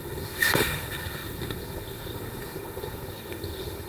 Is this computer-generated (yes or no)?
yes